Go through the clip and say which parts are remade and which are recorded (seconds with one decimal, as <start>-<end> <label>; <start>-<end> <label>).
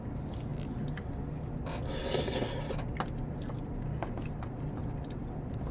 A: 0.0-5.7 recorded